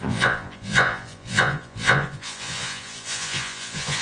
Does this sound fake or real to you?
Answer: fake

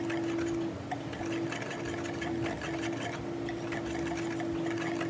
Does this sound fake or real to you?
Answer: real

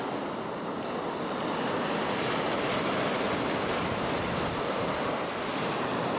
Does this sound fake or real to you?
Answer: real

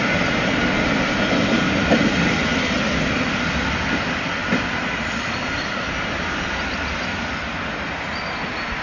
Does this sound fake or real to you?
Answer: real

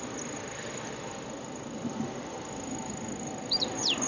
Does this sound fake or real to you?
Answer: fake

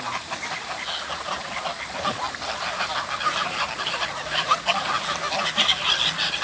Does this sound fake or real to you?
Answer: real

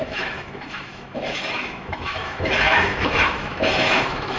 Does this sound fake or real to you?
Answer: fake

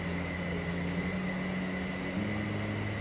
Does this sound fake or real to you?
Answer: real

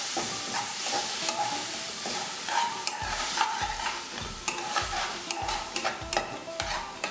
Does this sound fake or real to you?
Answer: fake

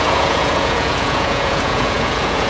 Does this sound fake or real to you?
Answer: fake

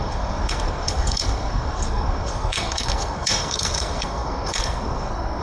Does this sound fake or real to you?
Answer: fake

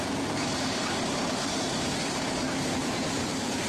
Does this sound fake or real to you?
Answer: fake